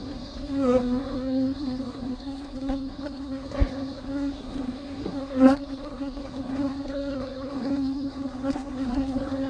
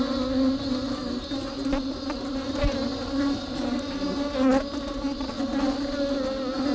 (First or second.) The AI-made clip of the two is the first